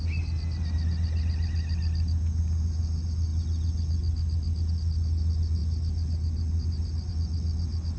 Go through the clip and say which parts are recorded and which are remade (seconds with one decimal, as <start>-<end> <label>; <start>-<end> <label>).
0.0-8.0 recorded